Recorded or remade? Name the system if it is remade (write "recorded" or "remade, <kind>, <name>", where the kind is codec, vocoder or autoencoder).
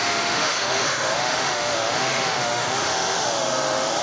remade, autoencoder, DAC-VAE